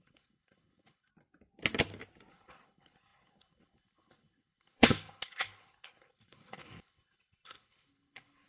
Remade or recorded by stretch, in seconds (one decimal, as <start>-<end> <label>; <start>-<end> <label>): 0.0-1.1 remade; 1.1-2.3 recorded; 2.3-8.5 remade